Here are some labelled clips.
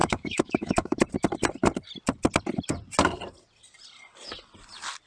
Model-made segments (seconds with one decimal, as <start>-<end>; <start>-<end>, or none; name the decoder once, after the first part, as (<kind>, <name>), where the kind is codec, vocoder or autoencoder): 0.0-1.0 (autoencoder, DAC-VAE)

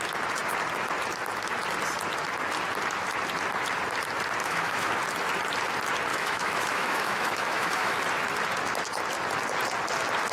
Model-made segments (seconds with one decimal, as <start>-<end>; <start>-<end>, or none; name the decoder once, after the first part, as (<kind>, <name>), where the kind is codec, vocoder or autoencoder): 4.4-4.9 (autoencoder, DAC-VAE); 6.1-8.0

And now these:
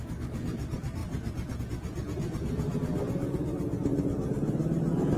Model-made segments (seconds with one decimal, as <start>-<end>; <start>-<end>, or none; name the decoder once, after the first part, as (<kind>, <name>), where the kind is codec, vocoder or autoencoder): none

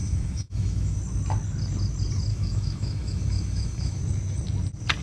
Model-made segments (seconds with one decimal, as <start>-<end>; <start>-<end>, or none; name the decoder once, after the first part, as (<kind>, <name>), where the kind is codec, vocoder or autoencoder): 0.0-1.0 (autoencoder, DAC-VAE); 2.3-4.0

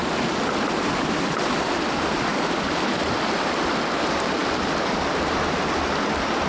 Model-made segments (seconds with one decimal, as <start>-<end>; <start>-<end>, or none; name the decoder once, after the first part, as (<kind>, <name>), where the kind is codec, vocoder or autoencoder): none